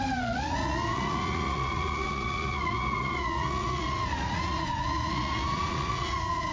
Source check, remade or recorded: remade